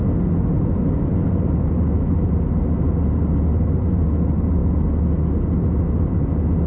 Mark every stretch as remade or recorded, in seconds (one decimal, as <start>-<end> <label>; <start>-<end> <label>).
0.0-6.7 recorded